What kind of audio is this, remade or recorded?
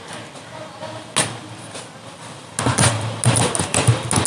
recorded